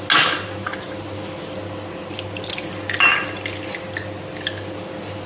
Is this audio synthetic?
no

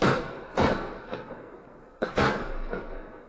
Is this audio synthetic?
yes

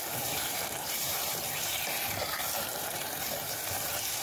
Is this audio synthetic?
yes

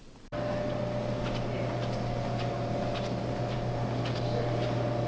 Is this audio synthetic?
no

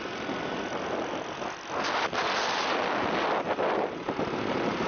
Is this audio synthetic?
no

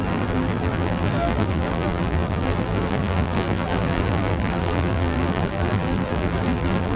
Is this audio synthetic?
yes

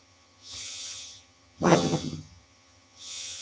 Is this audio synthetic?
yes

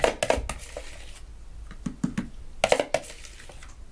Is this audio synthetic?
no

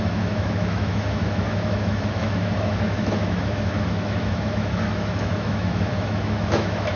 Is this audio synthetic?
yes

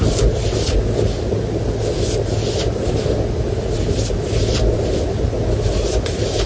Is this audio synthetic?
no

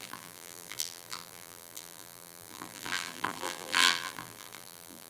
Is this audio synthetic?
yes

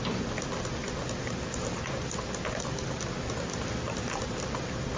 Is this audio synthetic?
no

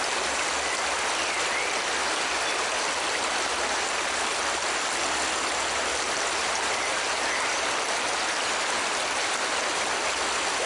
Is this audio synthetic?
no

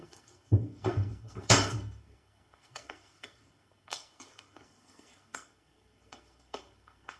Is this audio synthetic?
yes